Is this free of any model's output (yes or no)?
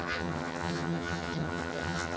no